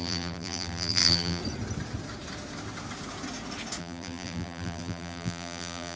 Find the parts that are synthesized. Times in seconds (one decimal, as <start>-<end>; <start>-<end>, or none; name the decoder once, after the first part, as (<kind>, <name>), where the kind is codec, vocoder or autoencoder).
0.0-1.4 (vocoder, BigVGAN v2); 3.8-6.0